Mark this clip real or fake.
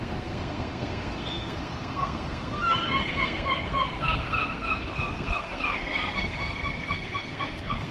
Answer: fake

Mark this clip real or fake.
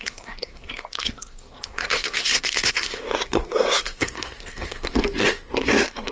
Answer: fake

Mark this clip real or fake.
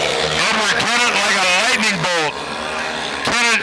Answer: real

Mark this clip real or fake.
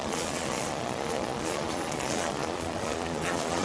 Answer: fake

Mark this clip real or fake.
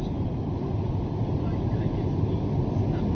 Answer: real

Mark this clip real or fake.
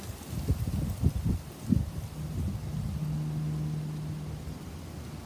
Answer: real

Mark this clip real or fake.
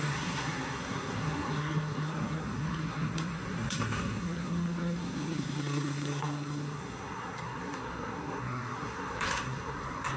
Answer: fake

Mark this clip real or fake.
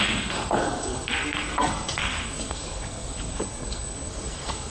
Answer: fake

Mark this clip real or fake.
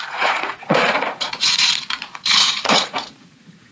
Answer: fake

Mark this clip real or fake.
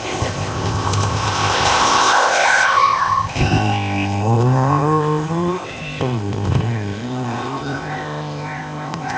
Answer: fake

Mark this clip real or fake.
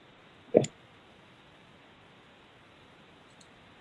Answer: real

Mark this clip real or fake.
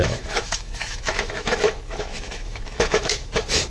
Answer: fake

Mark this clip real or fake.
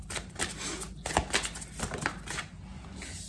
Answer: real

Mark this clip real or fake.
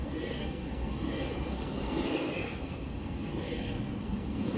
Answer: fake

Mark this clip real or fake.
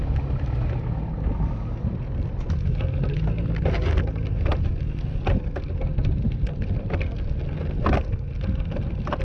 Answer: real